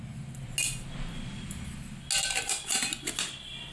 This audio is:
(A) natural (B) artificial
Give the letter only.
A